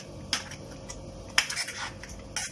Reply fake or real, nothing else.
real